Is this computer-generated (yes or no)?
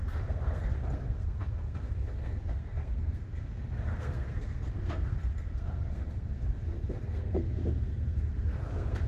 yes